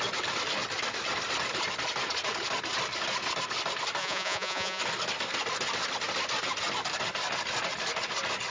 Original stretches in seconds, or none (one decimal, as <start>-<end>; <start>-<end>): 0.0-4.0; 4.8-8.5